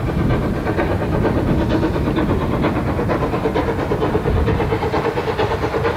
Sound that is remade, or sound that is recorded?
recorded